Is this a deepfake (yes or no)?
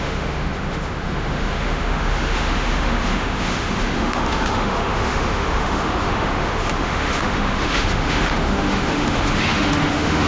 yes